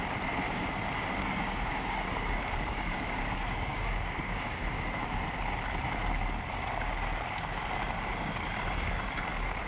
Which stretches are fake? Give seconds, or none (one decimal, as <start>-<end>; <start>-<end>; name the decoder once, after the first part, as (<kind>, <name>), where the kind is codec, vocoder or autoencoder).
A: 1.2-5.0 (codec, DAC)